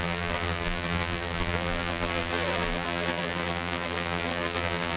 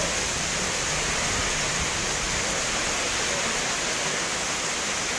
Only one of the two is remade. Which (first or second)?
first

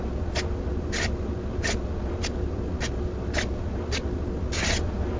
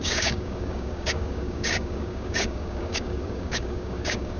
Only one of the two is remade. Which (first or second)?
second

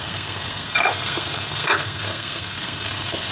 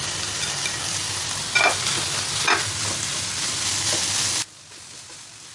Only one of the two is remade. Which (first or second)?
first